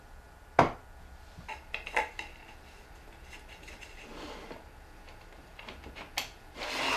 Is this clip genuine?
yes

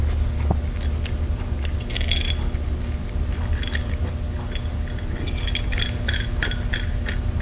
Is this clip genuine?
yes